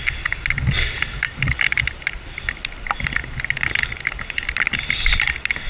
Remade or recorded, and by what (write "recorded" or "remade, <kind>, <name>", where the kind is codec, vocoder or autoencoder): recorded